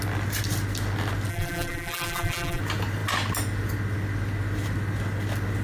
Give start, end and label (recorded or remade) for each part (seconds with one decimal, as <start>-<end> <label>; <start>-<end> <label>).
0.0-1.3 recorded; 1.3-2.6 remade; 2.6-5.6 recorded